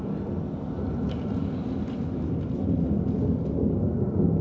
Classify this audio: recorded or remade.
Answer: recorded